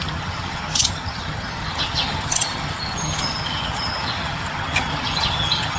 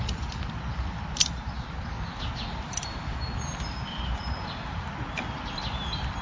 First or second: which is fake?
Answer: first